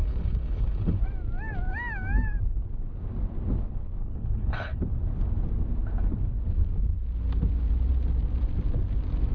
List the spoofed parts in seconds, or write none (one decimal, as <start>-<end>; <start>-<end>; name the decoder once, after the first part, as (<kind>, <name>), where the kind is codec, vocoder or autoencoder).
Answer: 0.0-1.0 (codec, HILCodec); 4.0-4.8